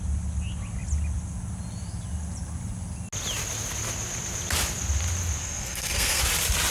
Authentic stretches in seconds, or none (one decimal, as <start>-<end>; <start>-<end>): 0.0-5.4; 6.2-6.7